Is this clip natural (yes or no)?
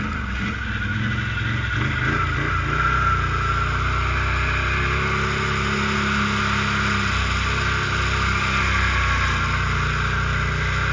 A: yes